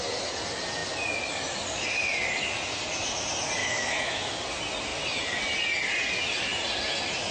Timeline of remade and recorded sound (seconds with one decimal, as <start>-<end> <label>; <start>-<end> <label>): 0.0-3.6 recorded; 3.6-4.3 remade; 4.3-7.3 recorded